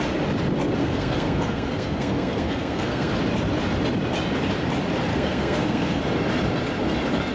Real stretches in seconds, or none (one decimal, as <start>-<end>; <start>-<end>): 0.0-0.8; 3.1-5.1; 6.0-7.3